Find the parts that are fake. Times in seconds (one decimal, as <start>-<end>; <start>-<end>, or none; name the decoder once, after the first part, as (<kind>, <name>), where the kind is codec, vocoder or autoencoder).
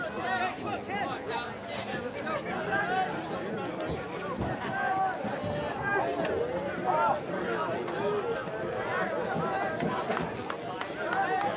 none